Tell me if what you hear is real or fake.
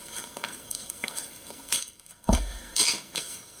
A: fake